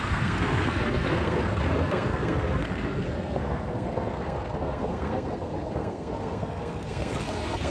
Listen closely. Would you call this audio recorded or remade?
remade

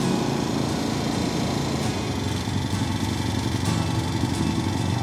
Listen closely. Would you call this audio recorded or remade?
recorded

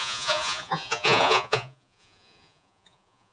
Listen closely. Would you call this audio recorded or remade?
remade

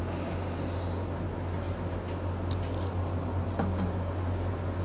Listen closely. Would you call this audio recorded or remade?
recorded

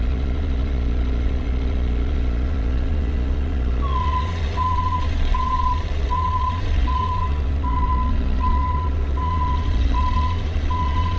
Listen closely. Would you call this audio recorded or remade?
remade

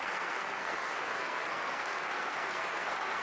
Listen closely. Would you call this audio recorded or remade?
remade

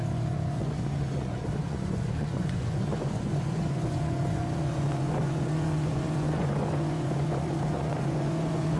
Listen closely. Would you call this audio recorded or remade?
remade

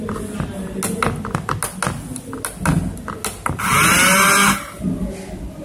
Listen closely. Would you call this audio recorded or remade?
recorded